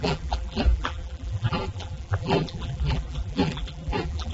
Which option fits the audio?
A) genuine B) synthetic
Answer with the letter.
B